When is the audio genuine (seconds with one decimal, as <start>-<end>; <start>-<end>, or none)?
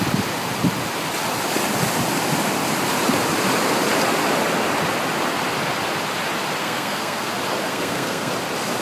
0.0-6.6; 7.3-7.7; 8.3-8.8